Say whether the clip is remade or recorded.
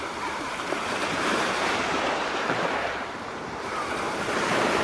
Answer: remade